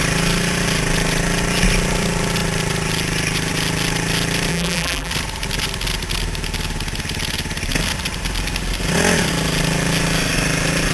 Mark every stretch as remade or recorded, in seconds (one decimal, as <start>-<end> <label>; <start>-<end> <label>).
0.0-4.5 recorded; 4.5-5.1 remade; 5.1-10.9 recorded